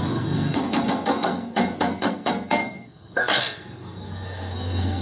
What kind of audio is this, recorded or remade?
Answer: remade